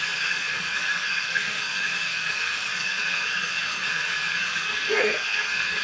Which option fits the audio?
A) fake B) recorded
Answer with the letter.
A